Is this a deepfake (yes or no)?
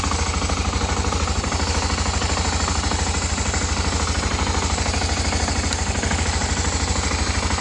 no